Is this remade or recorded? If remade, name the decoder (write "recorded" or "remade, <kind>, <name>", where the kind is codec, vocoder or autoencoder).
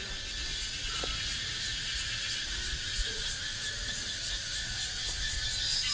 remade, vocoder, Vocos